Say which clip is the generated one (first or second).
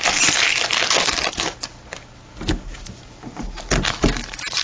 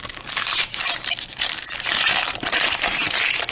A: second